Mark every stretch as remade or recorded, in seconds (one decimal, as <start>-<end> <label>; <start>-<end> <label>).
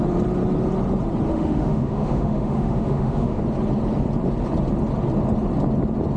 0.0-1.3 recorded; 1.3-3.4 remade; 3.4-6.2 recorded